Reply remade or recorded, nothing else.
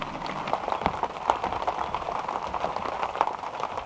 recorded